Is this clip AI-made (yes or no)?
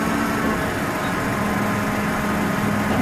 no